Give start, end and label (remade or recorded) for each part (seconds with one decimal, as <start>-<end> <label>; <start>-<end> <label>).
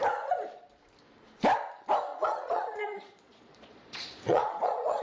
0.0-2.1 recorded; 2.1-5.0 remade